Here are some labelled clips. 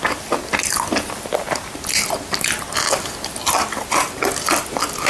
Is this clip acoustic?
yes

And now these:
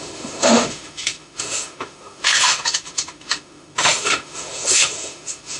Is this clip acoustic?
no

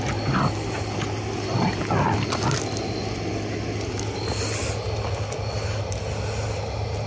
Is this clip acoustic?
yes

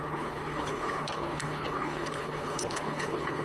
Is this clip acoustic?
no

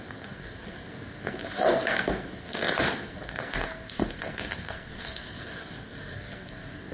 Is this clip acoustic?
no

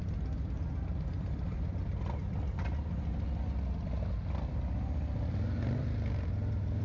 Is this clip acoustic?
yes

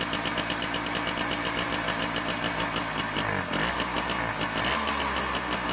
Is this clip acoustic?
yes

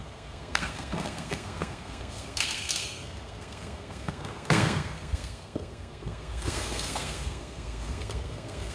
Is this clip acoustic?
no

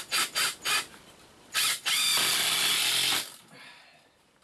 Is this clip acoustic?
yes